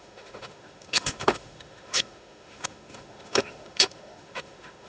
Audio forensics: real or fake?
fake